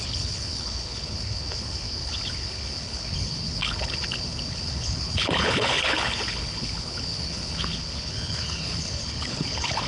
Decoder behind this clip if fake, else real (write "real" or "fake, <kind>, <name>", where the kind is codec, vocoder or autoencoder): fake, codec, HILCodec